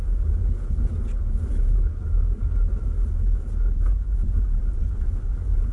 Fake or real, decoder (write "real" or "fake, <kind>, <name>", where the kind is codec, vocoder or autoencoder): real